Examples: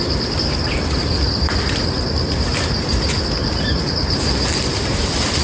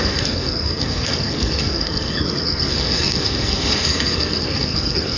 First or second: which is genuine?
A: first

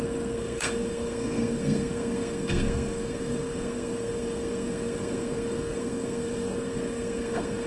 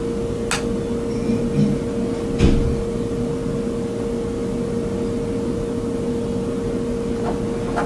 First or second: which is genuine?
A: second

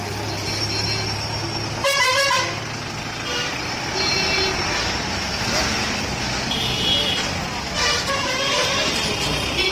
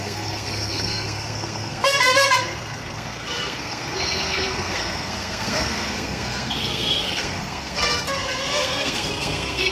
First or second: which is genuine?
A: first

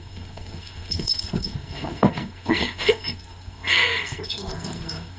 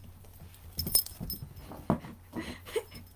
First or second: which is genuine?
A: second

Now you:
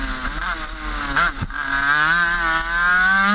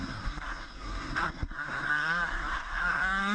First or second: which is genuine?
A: first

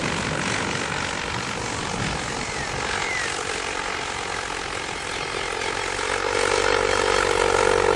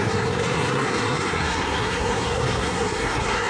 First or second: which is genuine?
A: first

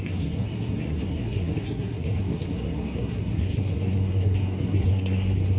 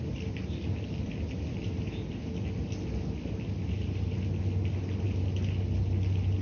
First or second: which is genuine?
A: second